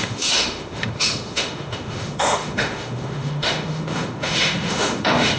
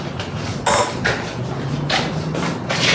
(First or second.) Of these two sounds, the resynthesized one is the first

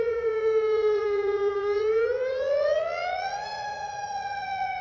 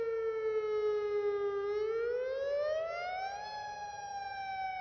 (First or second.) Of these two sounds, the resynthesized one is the first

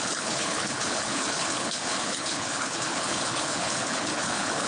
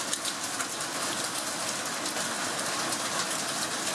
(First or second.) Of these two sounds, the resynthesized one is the first